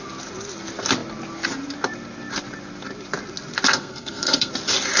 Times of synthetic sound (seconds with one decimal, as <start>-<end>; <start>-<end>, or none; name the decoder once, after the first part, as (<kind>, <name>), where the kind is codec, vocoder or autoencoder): 3.7-4.5 (codec, SNAC)